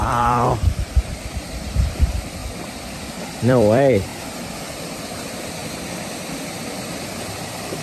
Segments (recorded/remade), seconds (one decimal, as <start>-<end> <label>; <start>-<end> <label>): 0.0-2.4 remade; 2.4-2.9 recorded; 2.9-4.1 remade; 4.1-4.7 recorded; 4.7-5.6 remade; 5.6-6.6 recorded; 6.6-7.8 remade